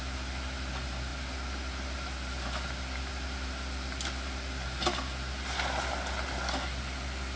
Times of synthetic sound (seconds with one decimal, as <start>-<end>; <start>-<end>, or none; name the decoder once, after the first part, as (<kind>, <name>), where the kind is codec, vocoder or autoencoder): none